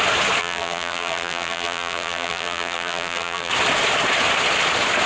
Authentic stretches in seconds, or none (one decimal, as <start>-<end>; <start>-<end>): 0.0-0.4; 3.5-5.1